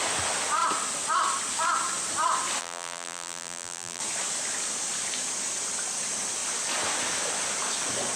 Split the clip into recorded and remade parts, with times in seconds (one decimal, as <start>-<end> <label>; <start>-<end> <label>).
0.0-2.6 recorded; 2.6-4.0 remade; 4.0-8.2 recorded